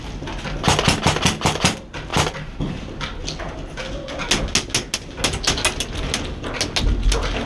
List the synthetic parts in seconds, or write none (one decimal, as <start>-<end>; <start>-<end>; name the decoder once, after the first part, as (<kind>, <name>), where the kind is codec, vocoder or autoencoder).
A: 2.1-2.9 (vocoder, BigVGAN v2)